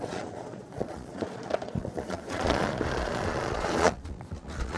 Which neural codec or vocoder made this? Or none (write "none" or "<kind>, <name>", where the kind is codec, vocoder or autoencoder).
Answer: vocoder, Vocos